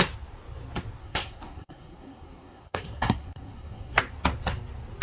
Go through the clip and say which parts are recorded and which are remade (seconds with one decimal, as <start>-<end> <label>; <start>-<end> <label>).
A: 0.0-1.0 recorded; 1.0-4.0 remade; 4.0-5.0 recorded